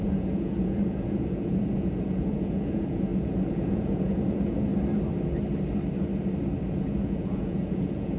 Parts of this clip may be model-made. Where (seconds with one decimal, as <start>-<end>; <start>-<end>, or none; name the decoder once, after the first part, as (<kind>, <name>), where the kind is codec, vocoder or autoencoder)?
0.0-4.7 (vocoder, Vocos); 6.7-8.2